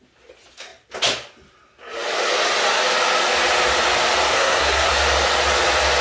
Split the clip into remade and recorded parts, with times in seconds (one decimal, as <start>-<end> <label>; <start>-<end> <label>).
0.0-4.3 recorded; 4.3-4.9 remade; 4.9-6.0 recorded